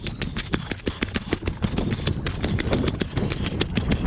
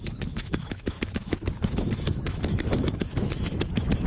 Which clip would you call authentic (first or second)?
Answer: first